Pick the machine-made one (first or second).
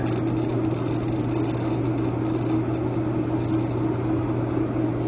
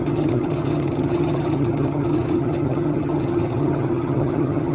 second